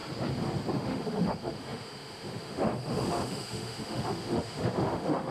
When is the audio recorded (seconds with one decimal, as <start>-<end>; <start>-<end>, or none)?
0.0-0.7